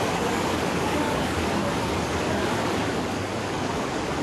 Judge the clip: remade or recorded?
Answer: remade